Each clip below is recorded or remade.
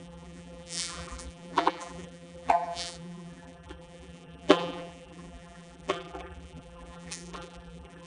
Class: remade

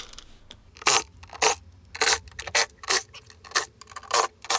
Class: recorded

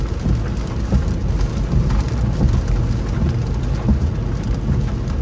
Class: recorded